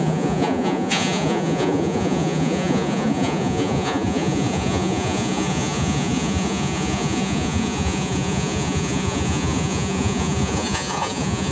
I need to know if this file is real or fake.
fake